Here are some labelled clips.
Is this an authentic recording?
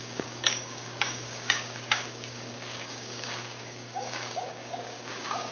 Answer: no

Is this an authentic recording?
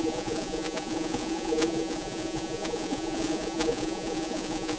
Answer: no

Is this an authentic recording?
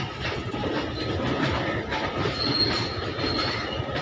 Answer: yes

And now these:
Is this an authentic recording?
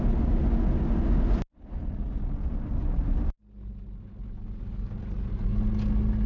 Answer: yes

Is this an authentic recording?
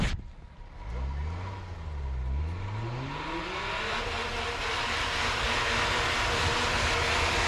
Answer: yes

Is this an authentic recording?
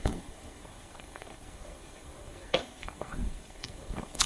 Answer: no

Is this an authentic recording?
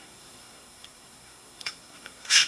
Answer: no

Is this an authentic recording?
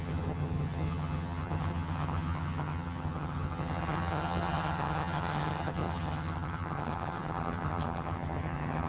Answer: no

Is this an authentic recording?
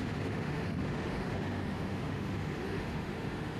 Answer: no